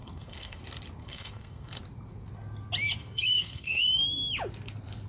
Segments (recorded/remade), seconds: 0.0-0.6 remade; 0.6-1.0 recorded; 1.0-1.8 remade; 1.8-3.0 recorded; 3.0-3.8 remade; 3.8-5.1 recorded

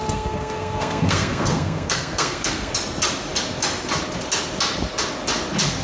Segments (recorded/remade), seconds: 0.0-2.7 remade; 2.7-5.8 recorded